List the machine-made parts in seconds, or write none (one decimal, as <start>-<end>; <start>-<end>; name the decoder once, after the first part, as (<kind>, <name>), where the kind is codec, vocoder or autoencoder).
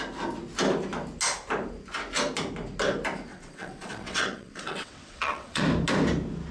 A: 3.3-5.6 (vocoder, WaveNeXt)